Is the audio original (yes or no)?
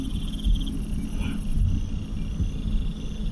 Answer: yes